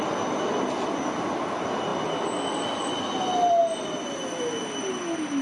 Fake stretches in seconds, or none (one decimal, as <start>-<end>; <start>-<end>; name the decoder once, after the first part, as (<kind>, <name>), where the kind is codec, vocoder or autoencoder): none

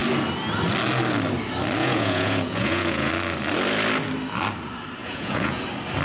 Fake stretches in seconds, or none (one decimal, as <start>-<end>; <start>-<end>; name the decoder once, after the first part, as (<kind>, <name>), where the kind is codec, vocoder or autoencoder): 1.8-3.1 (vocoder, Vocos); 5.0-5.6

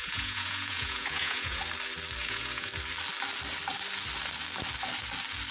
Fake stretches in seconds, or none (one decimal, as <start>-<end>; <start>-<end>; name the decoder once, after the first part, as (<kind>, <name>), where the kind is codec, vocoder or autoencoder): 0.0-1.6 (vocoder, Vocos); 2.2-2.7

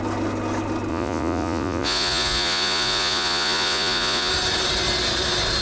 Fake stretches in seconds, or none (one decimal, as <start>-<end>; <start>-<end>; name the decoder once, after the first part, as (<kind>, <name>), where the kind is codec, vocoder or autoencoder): 0.9-4.3 (vocoder, Vocos)